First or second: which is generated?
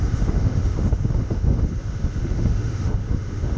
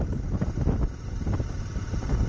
first